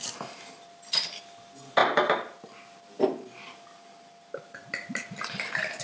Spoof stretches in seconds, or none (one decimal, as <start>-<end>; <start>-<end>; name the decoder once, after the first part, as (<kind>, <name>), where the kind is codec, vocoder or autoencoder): none